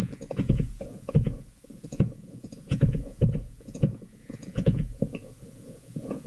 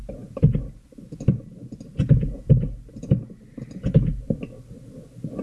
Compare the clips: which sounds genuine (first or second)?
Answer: second